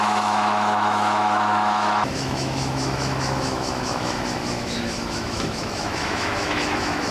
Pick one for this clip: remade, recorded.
remade